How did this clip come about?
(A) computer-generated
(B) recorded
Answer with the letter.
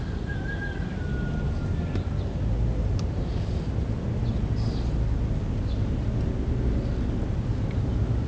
B